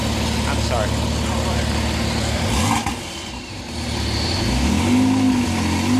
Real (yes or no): yes